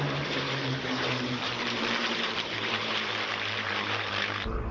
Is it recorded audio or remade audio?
remade